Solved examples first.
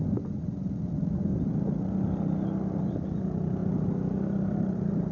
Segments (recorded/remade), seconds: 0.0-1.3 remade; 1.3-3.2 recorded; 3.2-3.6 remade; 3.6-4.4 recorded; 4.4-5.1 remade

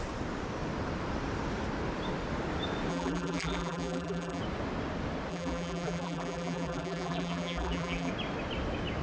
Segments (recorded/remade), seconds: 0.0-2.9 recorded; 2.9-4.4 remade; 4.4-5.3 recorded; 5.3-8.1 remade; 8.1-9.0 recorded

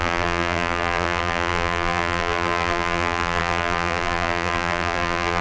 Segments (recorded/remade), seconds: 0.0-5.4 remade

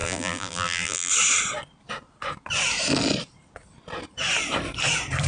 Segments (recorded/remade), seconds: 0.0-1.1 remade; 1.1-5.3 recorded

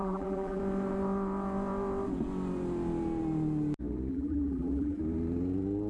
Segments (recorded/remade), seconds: 0.0-0.6 remade; 0.6-4.1 recorded; 4.1-5.0 remade; 5.0-5.9 recorded

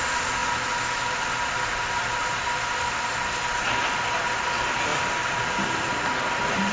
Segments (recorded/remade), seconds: 0.0-4.9 recorded; 4.9-6.7 remade

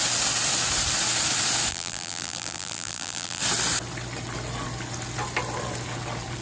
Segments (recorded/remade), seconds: 0.0-1.7 recorded; 1.7-3.4 remade; 3.4-6.4 recorded

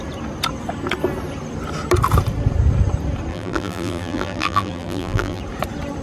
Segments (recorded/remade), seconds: 0.0-3.3 recorded; 3.3-5.4 remade; 5.4-6.0 recorded